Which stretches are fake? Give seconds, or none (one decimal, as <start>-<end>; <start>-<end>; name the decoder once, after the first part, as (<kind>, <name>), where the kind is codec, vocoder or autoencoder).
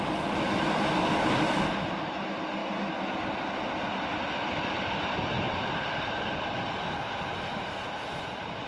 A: none